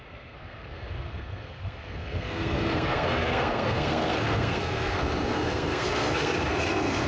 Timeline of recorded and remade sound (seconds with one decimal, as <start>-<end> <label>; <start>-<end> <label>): 0.0-7.1 remade

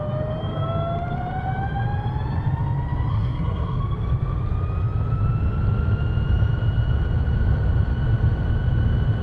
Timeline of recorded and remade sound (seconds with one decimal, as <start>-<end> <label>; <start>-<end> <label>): 0.0-3.1 recorded; 3.1-3.8 remade; 3.8-9.2 recorded